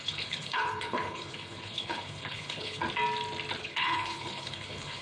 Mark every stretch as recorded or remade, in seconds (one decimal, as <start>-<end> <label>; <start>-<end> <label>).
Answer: 0.0-2.8 remade; 2.8-3.6 recorded; 3.6-5.0 remade

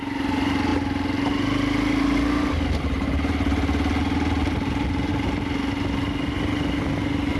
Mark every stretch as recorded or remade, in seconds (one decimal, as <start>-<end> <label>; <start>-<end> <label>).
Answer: 0.0-7.4 recorded

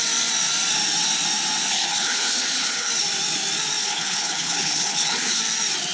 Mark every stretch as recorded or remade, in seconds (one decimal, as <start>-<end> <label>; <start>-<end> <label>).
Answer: 0.0-1.7 recorded; 1.7-2.9 remade; 2.9-3.8 recorded; 3.8-5.4 remade; 5.4-5.9 recorded

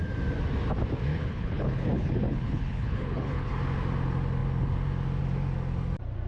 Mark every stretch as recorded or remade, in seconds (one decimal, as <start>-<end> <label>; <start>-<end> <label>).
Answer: 0.0-1.1 recorded; 1.1-3.5 remade; 3.5-6.3 recorded

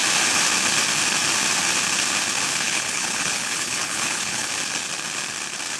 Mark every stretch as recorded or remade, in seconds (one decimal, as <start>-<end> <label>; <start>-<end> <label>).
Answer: 0.0-2.5 recorded; 2.5-4.5 remade; 4.5-5.8 recorded

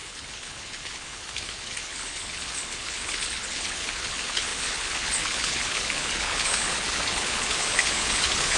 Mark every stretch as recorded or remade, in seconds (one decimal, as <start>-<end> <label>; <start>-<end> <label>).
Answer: 0.0-8.6 remade

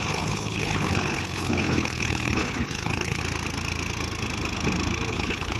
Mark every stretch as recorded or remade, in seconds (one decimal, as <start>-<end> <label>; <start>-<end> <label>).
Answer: 0.0-3.2 remade; 3.2-5.1 recorded; 5.1-5.6 remade